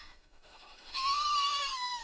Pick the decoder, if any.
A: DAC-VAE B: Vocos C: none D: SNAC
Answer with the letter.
A